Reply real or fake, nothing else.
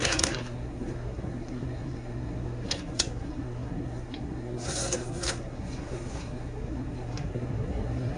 fake